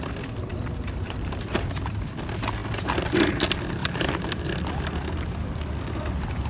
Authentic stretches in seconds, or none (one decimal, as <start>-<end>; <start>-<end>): 0.0-0.5; 1.9-3.8; 4.4-6.5